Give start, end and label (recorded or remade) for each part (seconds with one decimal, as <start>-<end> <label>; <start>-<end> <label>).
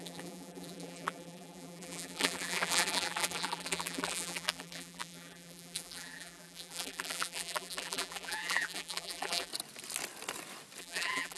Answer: 0.0-9.5 remade; 9.5-10.8 recorded; 10.8-11.4 remade